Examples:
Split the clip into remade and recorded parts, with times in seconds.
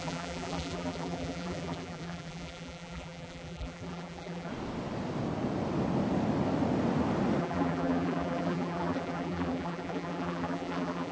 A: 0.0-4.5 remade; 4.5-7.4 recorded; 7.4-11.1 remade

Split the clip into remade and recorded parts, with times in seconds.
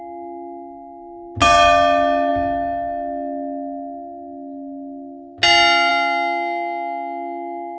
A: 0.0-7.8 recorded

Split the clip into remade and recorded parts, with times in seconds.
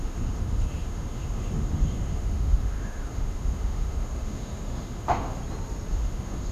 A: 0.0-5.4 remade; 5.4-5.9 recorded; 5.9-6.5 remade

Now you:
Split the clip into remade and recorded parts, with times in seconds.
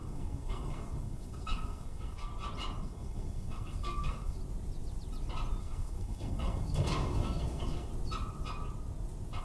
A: 0.0-2.3 remade; 2.3-2.8 recorded; 2.8-4.4 remade; 4.4-5.6 recorded; 5.6-7.9 remade; 7.9-9.4 recorded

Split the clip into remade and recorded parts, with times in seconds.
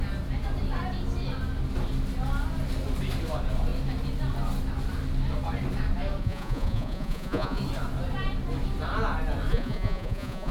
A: 0.0-6.2 recorded; 6.2-7.6 remade; 7.6-9.5 recorded; 9.5-10.5 remade